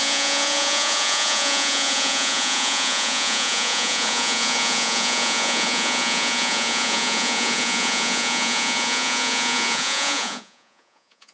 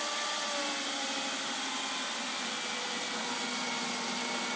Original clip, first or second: second